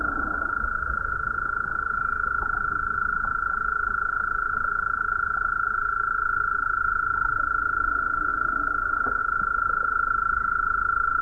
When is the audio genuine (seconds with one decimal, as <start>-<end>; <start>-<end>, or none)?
0.0-8.3; 9.2-11.2